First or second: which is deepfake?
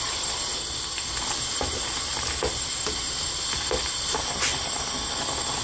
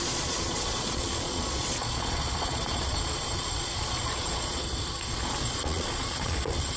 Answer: second